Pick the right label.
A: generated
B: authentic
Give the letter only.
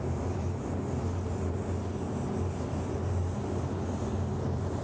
B